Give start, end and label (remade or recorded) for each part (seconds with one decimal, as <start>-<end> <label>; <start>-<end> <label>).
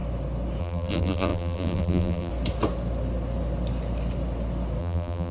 0.0-0.6 recorded; 0.6-2.3 remade; 2.3-4.8 recorded; 4.8-5.3 remade